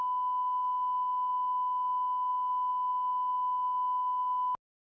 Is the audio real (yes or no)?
yes